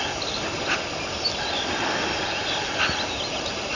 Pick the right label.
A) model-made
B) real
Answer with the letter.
B